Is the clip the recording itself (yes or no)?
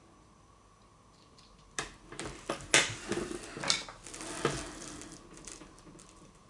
yes